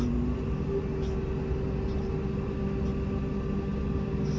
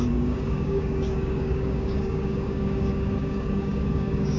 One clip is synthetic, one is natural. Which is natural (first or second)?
first